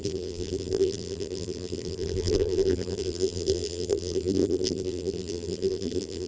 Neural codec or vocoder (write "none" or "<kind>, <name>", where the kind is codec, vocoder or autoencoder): vocoder, BigVGAN v2